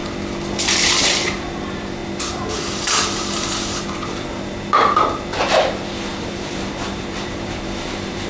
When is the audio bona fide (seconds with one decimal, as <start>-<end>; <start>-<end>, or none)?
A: 0.0-0.7